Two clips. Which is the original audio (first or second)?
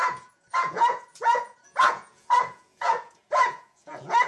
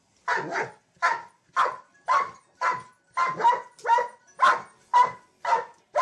second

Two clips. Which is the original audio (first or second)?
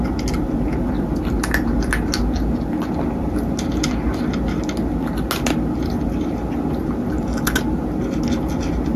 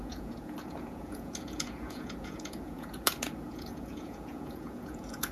first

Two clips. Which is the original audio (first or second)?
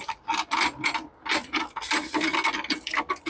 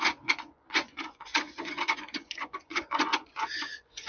first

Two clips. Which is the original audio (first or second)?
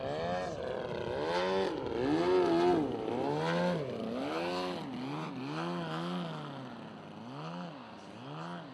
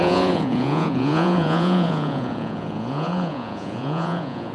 first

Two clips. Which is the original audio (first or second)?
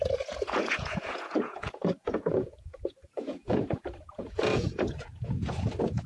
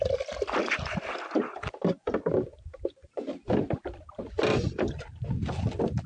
second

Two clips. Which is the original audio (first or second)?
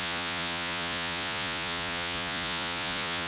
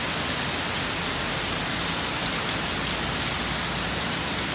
second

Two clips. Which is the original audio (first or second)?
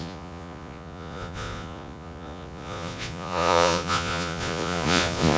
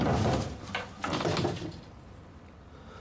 second